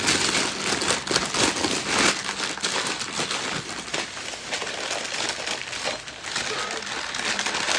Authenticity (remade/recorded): recorded